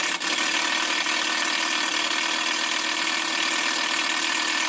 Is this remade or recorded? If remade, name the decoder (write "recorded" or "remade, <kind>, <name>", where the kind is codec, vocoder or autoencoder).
recorded